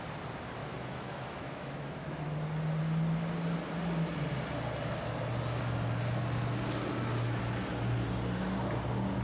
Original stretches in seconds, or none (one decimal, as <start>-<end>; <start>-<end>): 0.0-0.6; 2.2-9.2